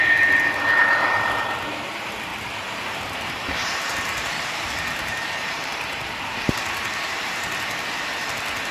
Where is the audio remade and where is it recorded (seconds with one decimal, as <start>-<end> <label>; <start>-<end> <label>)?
0.0-2.3 recorded; 2.3-6.1 remade; 6.1-8.7 recorded